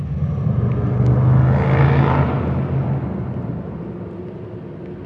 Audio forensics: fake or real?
real